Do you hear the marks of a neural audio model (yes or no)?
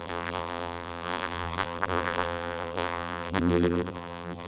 yes